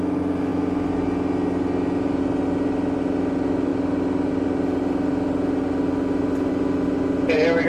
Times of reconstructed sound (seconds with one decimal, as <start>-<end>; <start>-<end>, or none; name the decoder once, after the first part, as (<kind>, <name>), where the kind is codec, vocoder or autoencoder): none

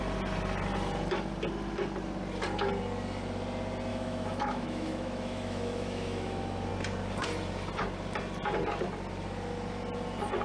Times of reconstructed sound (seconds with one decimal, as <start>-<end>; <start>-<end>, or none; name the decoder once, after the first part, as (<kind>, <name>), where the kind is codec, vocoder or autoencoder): 3.9-6.7 (autoencoder, DAC-VAE)